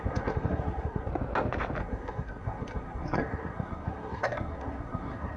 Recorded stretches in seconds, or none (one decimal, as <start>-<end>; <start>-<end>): 1.1-1.8

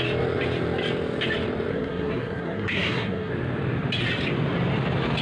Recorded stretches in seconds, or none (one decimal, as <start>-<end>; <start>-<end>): 0.0-1.7; 3.3-5.2

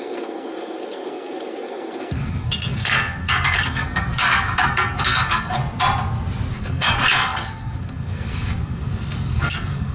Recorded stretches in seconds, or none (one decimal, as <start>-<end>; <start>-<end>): 5.6-6.5

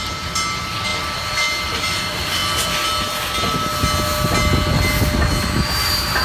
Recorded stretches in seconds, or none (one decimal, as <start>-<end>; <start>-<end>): 0.0-6.2

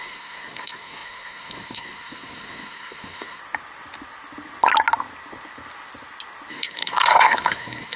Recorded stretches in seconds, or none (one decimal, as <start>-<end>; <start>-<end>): 3.4-6.5